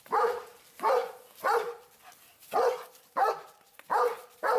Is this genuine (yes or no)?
yes